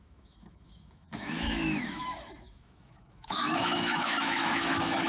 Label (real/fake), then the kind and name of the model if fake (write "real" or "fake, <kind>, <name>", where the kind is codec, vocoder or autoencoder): fake, autoencoder, DAC-VAE